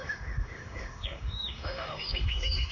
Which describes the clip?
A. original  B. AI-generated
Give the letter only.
B